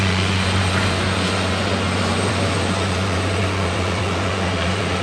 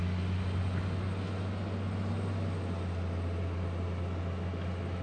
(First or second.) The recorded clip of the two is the second